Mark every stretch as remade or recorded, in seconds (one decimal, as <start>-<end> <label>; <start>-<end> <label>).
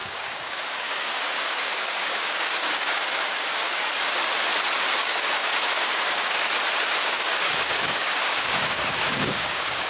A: 0.0-4.0 remade; 4.0-5.0 recorded; 5.0-6.5 remade; 6.5-7.0 recorded; 7.0-9.9 remade